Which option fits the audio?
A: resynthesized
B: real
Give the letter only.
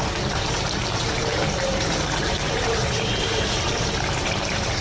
A